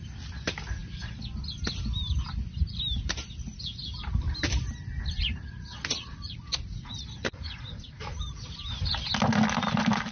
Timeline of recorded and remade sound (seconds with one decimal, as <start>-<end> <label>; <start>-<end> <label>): 0.0-5.9 recorded; 5.9-8.2 remade; 8.2-10.1 recorded